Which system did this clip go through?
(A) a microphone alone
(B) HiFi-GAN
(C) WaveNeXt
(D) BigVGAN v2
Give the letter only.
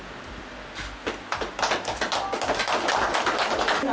A